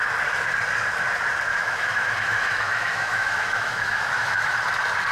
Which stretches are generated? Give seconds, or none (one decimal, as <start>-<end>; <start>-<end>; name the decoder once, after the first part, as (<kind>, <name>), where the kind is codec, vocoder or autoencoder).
1.5-4.6 (autoencoder, DAC-VAE)